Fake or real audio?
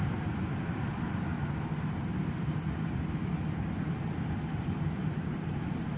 real